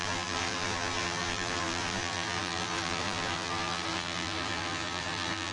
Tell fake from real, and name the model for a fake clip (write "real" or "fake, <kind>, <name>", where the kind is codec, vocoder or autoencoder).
fake, vocoder, BigVGAN v2